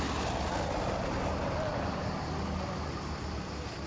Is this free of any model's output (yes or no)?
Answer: yes